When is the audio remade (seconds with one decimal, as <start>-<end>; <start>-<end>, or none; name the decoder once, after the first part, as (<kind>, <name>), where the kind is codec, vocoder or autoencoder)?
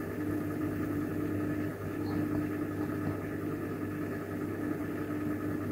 0.6-1.1 (vocoder, BigVGAN v2)